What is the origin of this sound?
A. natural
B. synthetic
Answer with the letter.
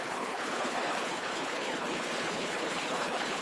B